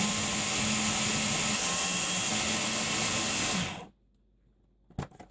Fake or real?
real